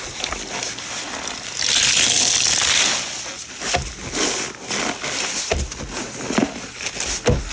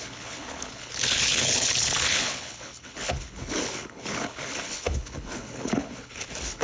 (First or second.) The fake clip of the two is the second